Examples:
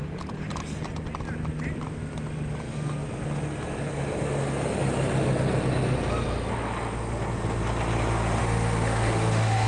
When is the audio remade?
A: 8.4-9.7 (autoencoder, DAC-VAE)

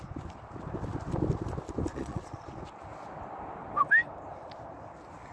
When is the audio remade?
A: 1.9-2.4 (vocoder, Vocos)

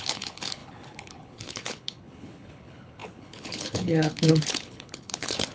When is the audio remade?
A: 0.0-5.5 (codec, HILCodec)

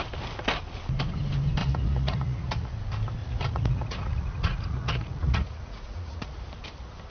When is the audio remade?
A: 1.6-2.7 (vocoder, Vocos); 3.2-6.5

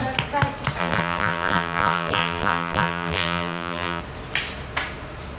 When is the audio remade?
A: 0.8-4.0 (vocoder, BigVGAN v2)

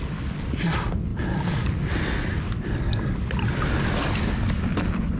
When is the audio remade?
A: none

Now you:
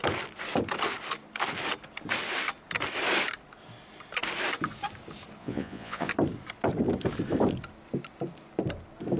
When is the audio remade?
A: 5.4-6.1 (vocoder, Vocos)